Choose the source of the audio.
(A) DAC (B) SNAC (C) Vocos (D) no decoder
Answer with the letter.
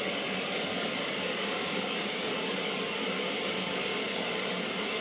A